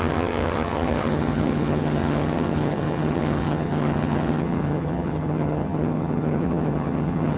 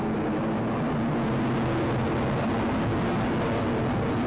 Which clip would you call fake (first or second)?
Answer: first